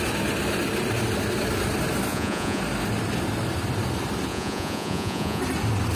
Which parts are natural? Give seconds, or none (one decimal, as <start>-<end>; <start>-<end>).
0.0-2.1; 2.6-4.3; 5.4-6.0